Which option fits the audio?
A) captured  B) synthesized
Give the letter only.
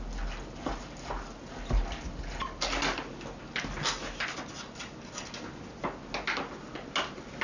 A